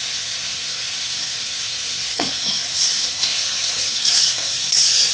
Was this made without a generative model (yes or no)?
no